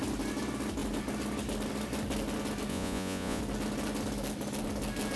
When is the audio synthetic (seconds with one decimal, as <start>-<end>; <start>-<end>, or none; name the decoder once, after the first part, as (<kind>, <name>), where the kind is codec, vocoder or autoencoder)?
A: 2.7-3.4 (vocoder, Vocos)

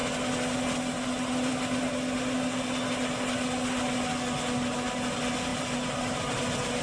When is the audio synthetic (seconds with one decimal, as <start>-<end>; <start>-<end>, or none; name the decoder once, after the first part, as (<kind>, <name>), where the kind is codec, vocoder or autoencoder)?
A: none

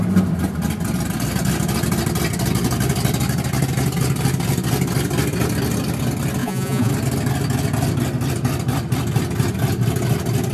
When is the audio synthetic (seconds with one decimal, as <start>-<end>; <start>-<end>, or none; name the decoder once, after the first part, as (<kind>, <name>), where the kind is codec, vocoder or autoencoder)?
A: 6.4-6.9 (vocoder, Vocos)

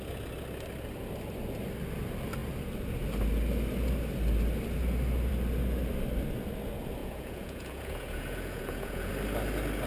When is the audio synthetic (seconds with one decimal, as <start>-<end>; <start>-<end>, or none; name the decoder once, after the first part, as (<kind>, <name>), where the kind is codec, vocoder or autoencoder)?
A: 7.0-9.1 (vocoder, Vocos)

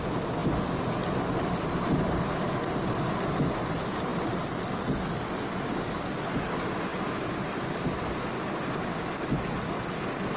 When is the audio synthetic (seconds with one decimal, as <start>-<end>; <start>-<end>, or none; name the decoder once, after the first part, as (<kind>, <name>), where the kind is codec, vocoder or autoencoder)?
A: none

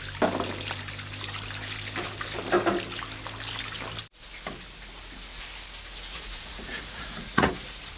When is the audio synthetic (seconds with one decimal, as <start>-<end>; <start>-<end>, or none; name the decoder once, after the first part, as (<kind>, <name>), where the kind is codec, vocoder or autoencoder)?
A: 6.1-7.5 (vocoder, Vocos)

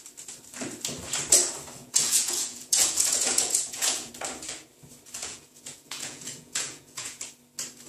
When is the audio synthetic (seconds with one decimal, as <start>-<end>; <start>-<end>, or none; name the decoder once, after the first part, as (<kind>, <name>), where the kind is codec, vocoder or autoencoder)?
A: 1.8-4.1 (vocoder, Vocos); 5.2-7.2